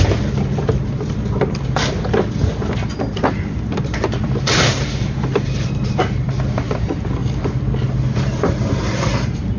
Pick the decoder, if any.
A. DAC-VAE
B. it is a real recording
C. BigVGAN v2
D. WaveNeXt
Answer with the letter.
C